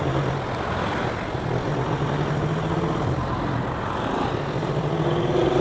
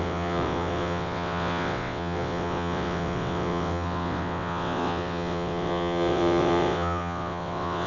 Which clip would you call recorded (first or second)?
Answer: first